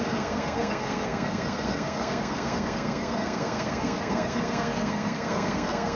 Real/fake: fake